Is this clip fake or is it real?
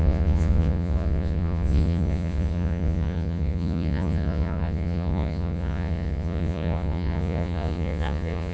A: fake